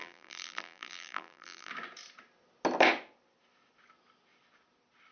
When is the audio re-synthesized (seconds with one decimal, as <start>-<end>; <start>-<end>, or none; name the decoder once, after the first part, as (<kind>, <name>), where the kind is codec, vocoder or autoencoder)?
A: 0.0-1.7 (vocoder, BigVGAN v2)